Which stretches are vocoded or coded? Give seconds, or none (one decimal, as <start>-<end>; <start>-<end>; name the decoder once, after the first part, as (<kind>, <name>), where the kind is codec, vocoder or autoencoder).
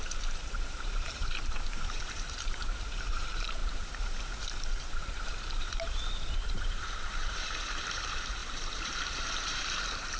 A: 0.0-10.2 (vocoder, BigVGAN v2)